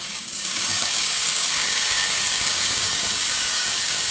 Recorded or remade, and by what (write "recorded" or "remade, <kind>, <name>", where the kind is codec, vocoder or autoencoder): remade, codec, DAC